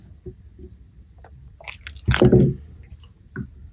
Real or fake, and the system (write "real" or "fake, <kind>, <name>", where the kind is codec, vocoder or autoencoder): real